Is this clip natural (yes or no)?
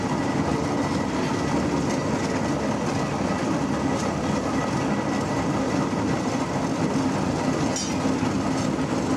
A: yes